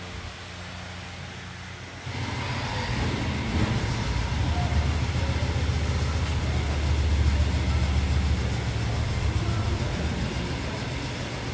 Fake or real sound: real